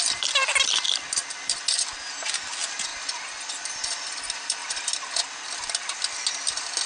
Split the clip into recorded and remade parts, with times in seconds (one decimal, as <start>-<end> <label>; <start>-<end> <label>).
0.0-2.9 remade; 2.9-3.4 recorded; 3.4-4.6 remade; 4.6-5.6 recorded; 5.6-6.9 remade